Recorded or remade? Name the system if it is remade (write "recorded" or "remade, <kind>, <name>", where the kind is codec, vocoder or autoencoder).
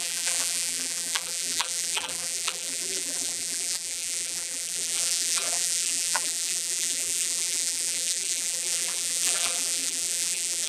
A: remade, vocoder, BigVGAN v2